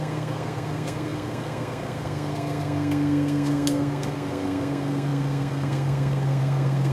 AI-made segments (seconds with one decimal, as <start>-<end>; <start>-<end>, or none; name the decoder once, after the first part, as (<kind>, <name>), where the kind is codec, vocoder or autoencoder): 0.0-6.9 (codec, SNAC)